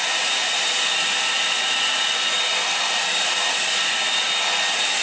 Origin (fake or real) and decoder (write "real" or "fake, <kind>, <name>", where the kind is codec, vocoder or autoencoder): real